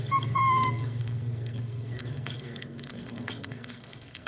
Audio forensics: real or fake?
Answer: fake